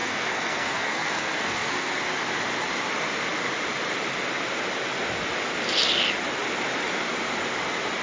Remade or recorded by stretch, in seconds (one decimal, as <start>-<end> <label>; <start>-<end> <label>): 0.0-1.9 remade; 1.9-8.0 recorded